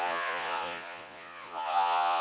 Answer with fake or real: fake